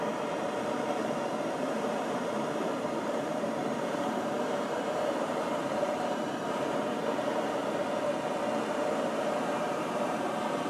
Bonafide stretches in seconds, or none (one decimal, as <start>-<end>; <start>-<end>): 7.6-9.2

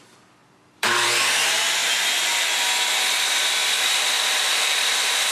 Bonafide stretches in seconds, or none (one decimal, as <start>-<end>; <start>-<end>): 1.8-2.9

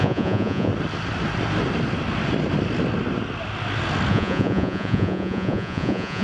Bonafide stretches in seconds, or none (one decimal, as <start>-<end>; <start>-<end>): 0.7-4.1

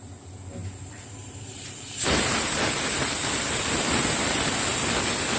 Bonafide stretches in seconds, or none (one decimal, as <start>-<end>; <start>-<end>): 0.0-1.2; 4.4-5.4

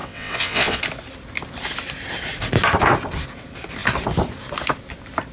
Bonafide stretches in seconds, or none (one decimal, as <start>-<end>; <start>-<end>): 0.8-5.3

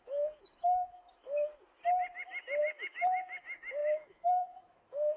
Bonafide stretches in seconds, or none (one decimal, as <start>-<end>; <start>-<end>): 1.5-2.6

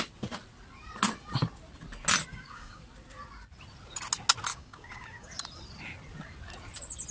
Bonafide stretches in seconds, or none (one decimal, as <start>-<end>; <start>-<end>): 0.0-2.3; 2.8-4.5; 5.3-7.1

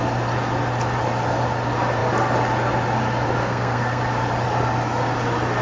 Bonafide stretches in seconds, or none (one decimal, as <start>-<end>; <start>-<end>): 0.0-3.4; 4.0-5.6